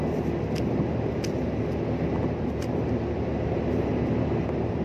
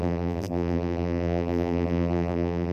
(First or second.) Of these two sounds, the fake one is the second